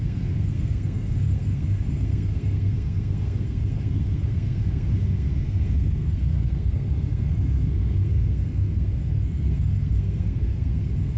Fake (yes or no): yes